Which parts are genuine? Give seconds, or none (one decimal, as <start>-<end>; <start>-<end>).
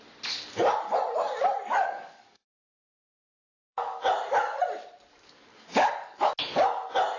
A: 0.0-1.8; 4.0-5.5; 6.3-7.2